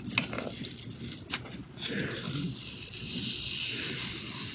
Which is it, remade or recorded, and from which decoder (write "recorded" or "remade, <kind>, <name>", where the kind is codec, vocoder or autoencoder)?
recorded